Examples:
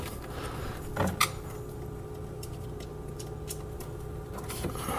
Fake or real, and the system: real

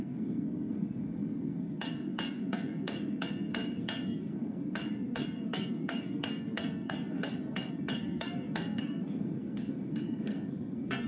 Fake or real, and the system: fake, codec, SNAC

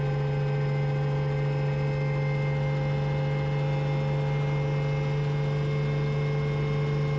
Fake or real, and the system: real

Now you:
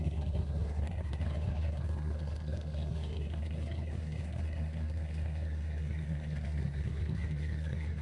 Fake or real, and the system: fake, codec, SNAC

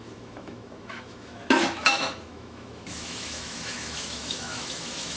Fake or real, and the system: fake, autoencoder, DAC-VAE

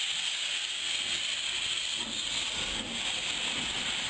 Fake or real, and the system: real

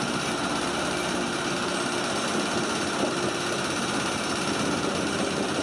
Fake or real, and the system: real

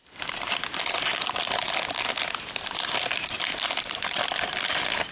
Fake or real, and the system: real